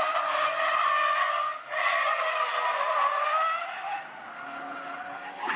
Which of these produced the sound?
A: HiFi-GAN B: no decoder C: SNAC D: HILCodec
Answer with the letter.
B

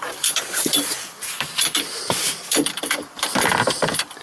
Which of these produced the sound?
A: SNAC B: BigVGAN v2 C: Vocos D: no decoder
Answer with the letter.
B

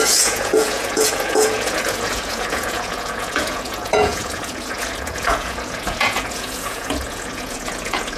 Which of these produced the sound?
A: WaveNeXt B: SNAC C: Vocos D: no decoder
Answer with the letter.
C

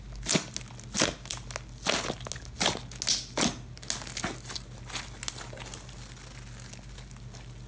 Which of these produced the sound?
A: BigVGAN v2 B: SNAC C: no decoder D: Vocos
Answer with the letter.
C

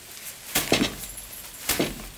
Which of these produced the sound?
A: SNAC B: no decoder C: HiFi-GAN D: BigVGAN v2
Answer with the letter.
B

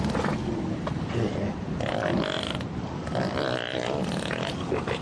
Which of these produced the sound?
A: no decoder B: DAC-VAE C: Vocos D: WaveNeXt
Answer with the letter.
A